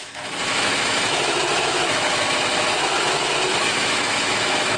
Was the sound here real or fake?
fake